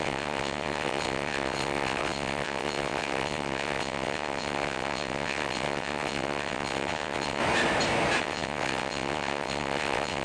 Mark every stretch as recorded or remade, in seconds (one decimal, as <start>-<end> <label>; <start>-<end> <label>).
0.0-7.4 remade; 7.4-8.2 recorded; 8.2-10.2 remade